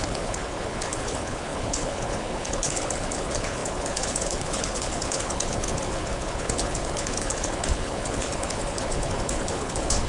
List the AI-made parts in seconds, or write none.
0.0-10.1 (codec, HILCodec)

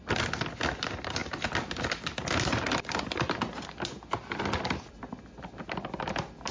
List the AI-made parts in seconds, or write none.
none

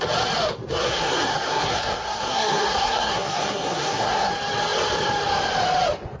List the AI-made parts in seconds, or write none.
0.7-4.3 (codec, SNAC)

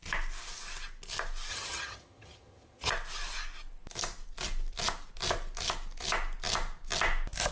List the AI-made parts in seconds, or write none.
1.5-2.9 (vocoder, HiFi-GAN)

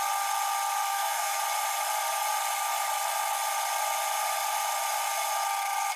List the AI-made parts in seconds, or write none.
0.9-1.4 (codec, SNAC)

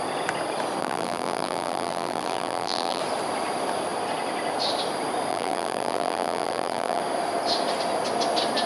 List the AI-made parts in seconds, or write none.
0.8-3.0 (vocoder, BigVGAN v2); 5.3-7.0

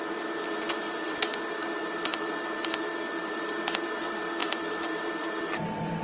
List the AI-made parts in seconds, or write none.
none

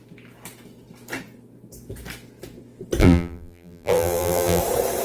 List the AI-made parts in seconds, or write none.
3.0-4.6 (vocoder, BigVGAN v2)